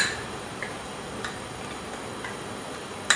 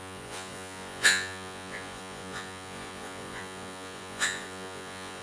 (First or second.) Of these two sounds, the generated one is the second